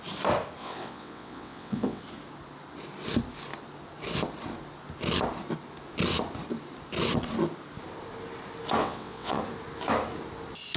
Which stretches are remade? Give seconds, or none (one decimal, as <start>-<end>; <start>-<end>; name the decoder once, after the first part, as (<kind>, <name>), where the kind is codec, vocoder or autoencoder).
0.6-2.0 (vocoder, WaveNeXt); 8.8-9.4